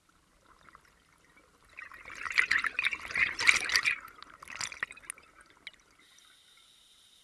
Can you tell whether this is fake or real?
real